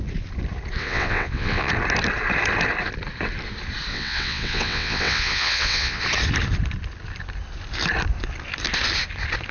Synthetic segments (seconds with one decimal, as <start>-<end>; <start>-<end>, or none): 0.8-1.7; 3.9-6.0